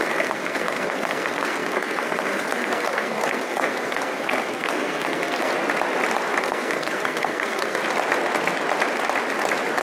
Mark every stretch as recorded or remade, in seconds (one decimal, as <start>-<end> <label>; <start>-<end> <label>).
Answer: 0.0-5.5 remade; 5.5-6.4 recorded; 6.4-7.8 remade; 7.8-9.8 recorded

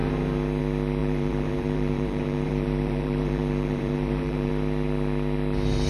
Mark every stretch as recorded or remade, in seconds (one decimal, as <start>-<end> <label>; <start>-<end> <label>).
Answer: 0.0-1.0 recorded; 1.0-4.5 remade; 4.5-5.9 recorded